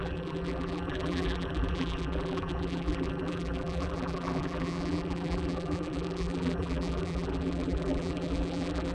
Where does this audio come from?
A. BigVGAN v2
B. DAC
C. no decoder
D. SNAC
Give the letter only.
A